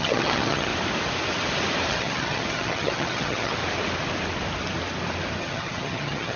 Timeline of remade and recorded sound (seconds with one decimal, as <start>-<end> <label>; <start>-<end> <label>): 0.0-0.7 remade; 0.7-1.9 recorded; 1.9-3.6 remade; 3.6-5.4 recorded; 5.4-6.4 remade

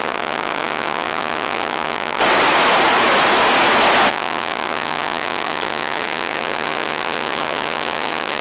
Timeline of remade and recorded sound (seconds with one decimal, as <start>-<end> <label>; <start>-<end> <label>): 0.0-2.2 remade; 2.2-4.1 recorded; 4.1-8.4 remade

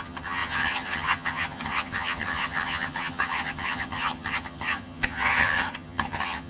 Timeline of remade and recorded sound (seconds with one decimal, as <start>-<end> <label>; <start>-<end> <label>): 0.0-6.5 remade

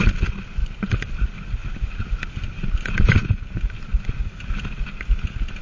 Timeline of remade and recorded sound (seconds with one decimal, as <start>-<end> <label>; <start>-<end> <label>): 0.0-5.6 recorded

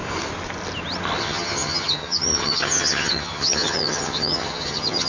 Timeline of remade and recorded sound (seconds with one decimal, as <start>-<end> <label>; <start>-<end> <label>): 0.0-1.2 recorded; 1.2-5.1 remade

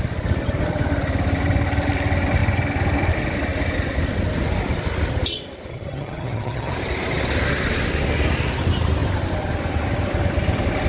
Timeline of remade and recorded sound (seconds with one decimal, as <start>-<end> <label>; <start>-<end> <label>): 0.0-5.7 recorded; 5.7-6.7 remade; 6.7-10.9 recorded

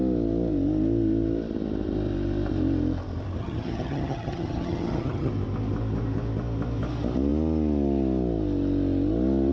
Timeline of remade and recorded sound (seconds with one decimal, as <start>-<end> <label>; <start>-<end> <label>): 0.0-3.4 recorded; 3.4-5.3 remade; 5.3-9.5 recorded